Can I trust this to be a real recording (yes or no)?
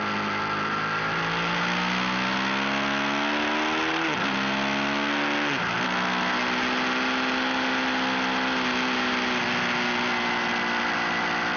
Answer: yes